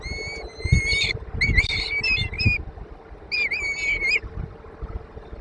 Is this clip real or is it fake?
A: real